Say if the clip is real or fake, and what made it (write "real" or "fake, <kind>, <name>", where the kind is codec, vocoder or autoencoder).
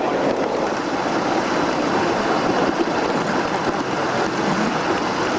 real